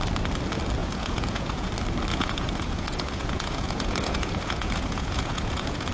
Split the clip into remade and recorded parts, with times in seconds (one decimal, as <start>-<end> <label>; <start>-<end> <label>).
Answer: 0.0-0.8 recorded; 0.8-1.7 remade; 1.7-2.1 recorded; 2.1-5.9 remade